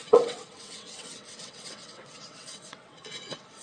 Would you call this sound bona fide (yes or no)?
no